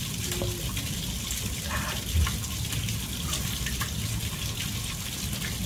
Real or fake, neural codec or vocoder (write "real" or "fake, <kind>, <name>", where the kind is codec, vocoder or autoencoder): real